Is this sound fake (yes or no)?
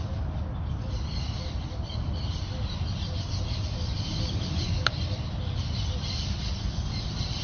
no